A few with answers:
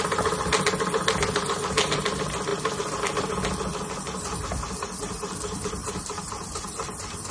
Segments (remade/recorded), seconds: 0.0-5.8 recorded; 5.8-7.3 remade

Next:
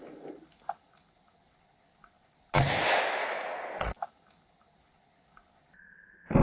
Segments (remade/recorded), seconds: 0.0-3.2 recorded; 3.2-4.0 remade; 4.0-6.4 recorded

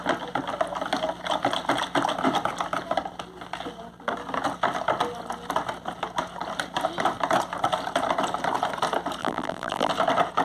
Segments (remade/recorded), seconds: 0.0-9.2 recorded; 9.2-9.9 remade; 9.9-10.4 recorded

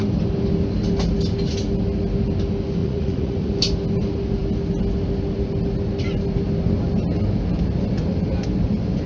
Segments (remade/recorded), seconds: 0.0-2.8 recorded; 2.8-3.5 remade; 3.5-9.1 recorded

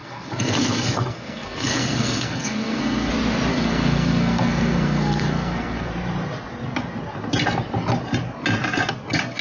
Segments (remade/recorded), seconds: 0.0-3.1 remade; 3.1-3.5 recorded; 3.5-5.9 remade; 5.9-9.4 recorded